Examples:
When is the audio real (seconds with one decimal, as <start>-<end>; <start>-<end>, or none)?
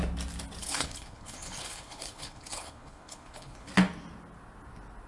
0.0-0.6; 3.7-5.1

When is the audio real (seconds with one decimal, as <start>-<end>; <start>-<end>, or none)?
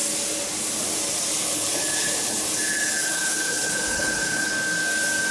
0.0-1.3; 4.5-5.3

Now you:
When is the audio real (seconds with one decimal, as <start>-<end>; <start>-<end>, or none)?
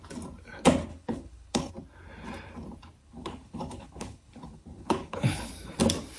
0.0-0.9; 1.7-3.0; 5.5-6.2